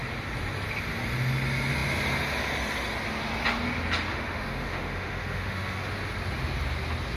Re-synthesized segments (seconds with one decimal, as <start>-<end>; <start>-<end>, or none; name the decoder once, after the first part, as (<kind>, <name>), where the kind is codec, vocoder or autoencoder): 4.1-5.9 (autoencoder, DAC-VAE)